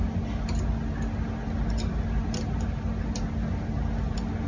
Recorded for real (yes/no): yes